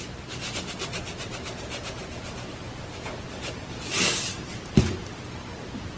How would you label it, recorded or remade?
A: recorded